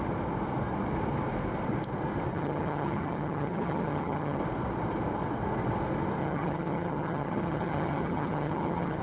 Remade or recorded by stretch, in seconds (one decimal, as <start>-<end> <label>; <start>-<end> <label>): 0.0-2.3 recorded; 2.3-4.4 remade; 4.4-6.2 recorded; 6.2-9.0 remade